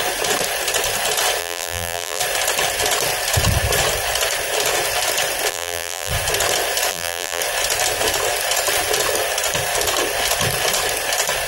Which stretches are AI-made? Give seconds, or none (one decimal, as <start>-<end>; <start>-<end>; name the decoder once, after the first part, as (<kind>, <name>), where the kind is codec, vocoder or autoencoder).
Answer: 1.4-2.2 (vocoder, BigVGAN v2); 5.5-6.1; 6.9-7.4